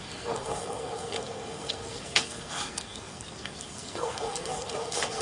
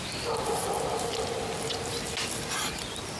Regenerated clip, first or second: first